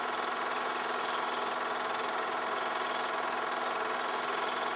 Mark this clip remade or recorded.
recorded